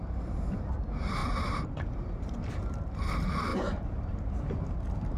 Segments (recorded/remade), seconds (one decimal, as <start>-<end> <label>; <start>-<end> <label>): 0.0-1.2 recorded; 1.2-2.5 remade; 2.5-3.5 recorded; 3.5-4.4 remade; 4.4-5.2 recorded